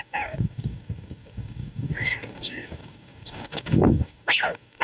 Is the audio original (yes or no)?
no